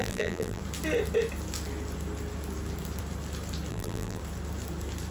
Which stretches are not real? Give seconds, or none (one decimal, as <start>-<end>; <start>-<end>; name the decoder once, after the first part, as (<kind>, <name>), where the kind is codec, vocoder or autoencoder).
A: 0.0-0.6 (vocoder, BigVGAN v2); 3.7-4.2